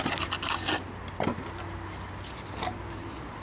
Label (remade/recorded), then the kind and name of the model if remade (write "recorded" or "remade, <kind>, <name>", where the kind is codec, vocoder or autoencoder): recorded